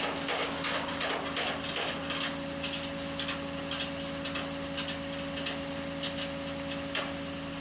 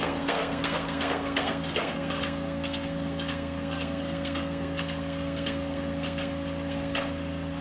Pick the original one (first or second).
first